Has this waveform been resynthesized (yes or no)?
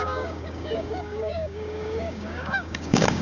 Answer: yes